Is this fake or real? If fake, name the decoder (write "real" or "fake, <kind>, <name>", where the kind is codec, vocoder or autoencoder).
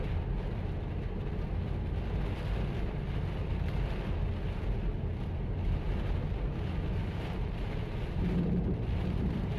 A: real